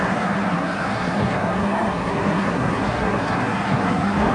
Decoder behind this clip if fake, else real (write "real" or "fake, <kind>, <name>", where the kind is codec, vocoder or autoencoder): fake, codec, SNAC